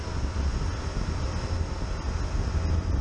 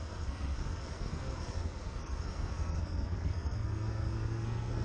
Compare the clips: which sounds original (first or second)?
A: first